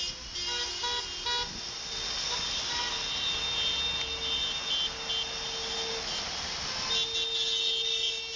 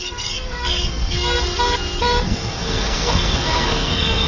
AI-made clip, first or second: second